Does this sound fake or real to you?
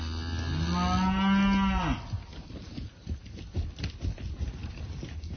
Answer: real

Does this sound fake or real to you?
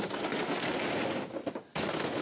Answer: fake